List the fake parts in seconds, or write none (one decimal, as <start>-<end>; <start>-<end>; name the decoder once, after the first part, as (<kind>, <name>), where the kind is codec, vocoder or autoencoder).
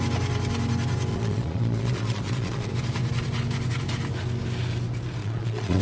1.1-2.7 (vocoder, Vocos); 5.2-5.8